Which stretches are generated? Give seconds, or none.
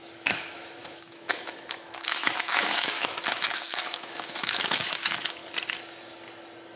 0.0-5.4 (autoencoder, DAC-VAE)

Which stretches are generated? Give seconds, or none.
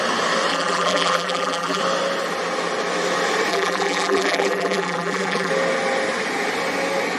0.5-1.8 (vocoder, BigVGAN v2); 3.5-5.5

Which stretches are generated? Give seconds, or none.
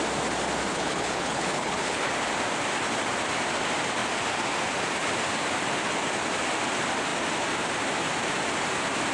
0.7-2.1 (codec, HILCodec)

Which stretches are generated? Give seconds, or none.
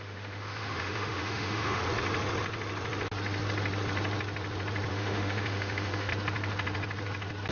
0.0-1.8 (autoencoder, DAC-VAE); 4.9-6.1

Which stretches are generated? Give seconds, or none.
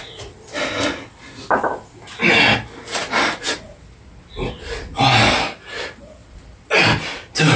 none